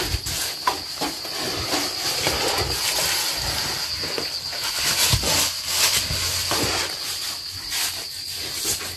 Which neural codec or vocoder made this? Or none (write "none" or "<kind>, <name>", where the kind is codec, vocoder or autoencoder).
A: none